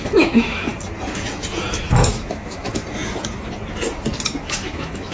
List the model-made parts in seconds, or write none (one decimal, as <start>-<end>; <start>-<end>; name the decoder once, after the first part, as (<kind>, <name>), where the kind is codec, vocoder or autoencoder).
0.0-0.7 (autoencoder, DAC-VAE); 2.1-2.8; 4.4-5.1